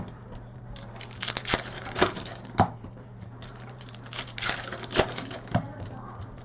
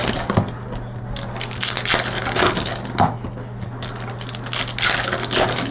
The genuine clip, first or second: second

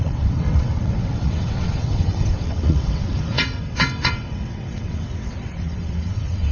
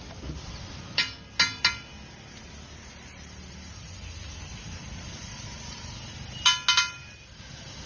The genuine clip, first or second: second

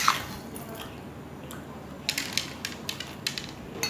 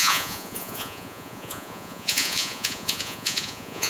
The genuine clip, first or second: first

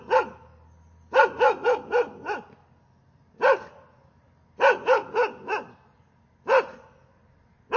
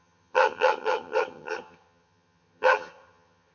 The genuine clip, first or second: first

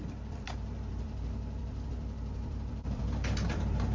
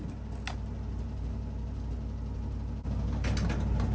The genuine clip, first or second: second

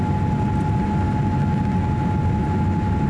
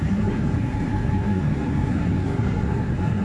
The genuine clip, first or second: first